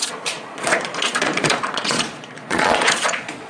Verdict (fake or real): fake